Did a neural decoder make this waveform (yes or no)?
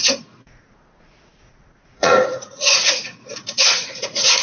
yes